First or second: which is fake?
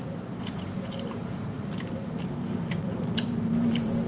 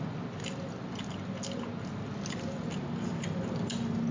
first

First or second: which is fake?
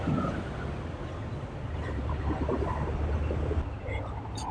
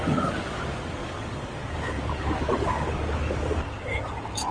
second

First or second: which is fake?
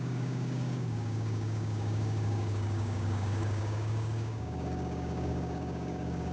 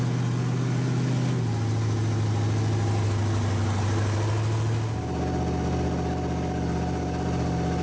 first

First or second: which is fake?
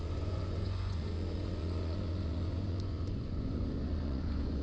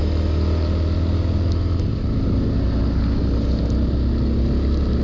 first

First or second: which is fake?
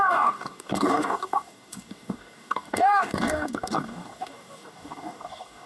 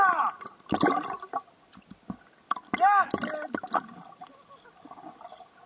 first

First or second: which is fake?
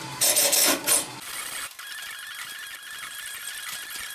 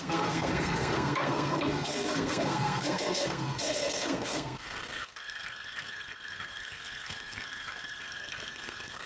second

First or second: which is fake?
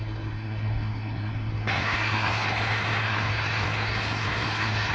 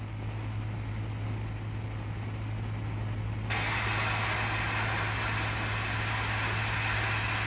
first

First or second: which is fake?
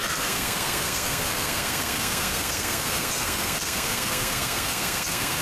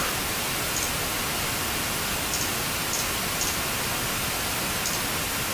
first